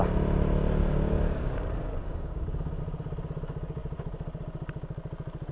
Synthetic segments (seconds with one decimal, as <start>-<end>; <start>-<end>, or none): 0.8-2.8